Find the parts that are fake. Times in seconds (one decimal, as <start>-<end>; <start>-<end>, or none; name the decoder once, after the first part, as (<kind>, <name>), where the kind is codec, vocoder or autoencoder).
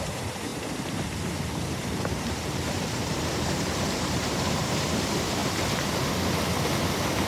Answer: 0.0-5.4 (vocoder, BigVGAN v2)